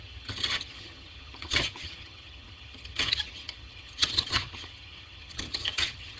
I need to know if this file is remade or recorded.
remade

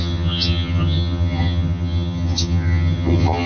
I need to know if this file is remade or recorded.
remade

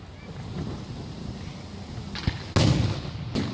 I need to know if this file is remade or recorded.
recorded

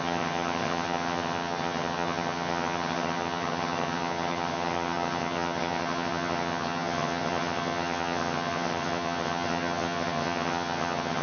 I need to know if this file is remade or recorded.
remade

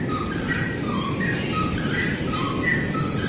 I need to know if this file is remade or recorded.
recorded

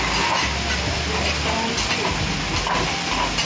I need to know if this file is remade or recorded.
recorded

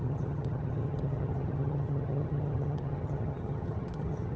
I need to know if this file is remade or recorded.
remade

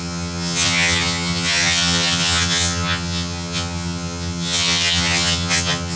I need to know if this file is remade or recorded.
remade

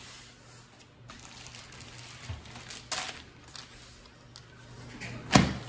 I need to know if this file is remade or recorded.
recorded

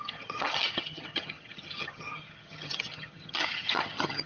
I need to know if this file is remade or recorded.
remade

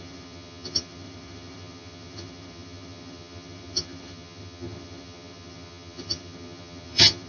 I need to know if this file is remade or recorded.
remade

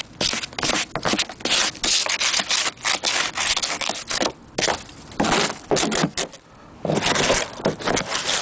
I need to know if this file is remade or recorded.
recorded